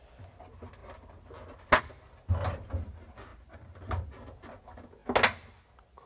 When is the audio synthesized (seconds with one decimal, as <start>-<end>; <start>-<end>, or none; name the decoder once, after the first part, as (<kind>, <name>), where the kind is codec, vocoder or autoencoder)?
none